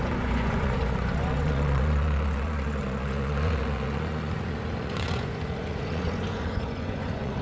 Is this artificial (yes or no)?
yes